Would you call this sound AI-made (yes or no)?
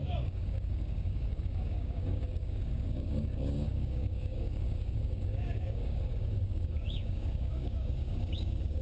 yes